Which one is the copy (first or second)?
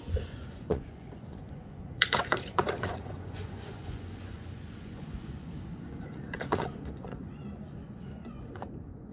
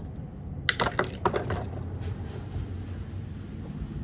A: first